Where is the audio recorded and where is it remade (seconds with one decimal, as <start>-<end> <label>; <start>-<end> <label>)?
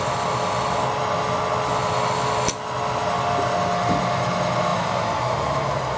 0.0-6.0 recorded